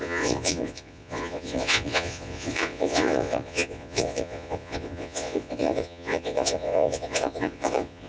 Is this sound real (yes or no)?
no